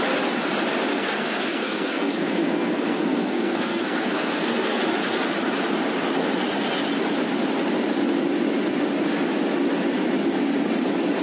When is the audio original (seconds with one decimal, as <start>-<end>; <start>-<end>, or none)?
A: 0.0-0.9; 4.8-11.2